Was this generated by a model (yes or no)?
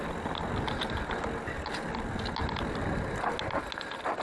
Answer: no